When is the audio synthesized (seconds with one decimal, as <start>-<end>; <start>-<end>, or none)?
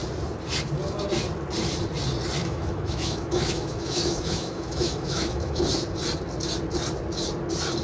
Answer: 2.4-5.6